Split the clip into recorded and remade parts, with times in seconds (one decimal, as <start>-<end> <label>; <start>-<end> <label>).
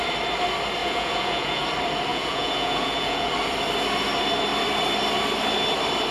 0.0-0.8 recorded; 0.8-1.6 remade; 1.6-2.1 recorded; 2.1-3.3 remade; 3.3-6.1 recorded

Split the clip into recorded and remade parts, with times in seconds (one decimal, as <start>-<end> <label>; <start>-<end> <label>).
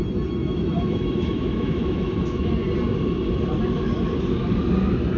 0.0-0.4 recorded; 0.4-2.5 remade; 2.5-5.2 recorded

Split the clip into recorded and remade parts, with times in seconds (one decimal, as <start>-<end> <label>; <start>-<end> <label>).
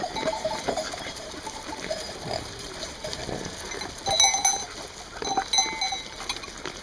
0.0-3.2 remade; 3.2-6.8 recorded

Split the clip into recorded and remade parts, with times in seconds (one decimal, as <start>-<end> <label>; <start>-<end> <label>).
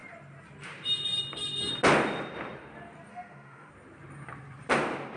0.0-3.1 recorded; 3.1-3.7 remade; 3.7-5.2 recorded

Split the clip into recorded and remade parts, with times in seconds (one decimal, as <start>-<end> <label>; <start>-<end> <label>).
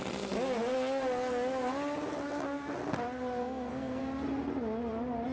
0.0-3.4 recorded; 3.4-4.0 remade; 4.0-5.3 recorded